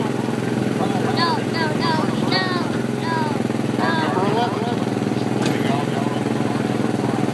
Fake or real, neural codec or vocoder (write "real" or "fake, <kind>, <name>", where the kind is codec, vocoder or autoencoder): real